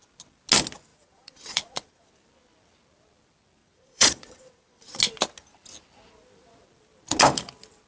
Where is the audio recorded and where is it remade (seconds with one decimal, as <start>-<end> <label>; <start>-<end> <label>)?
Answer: 0.0-0.9 recorded; 0.9-2.1 remade; 2.1-3.6 recorded; 3.6-5.0 remade; 5.0-7.9 recorded